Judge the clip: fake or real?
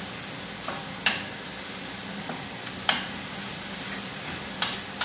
real